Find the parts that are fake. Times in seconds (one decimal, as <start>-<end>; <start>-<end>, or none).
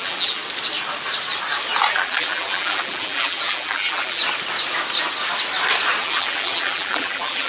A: 0.0-0.4; 1.9-4.2; 6.0-7.5